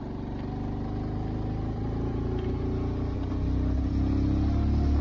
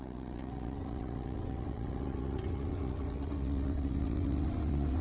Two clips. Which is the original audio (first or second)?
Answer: first